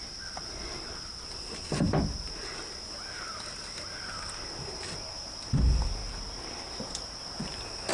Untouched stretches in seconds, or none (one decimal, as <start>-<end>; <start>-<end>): 0.0-7.9